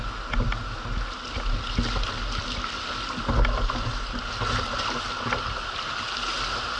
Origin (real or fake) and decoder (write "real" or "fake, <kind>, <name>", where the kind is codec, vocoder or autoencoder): real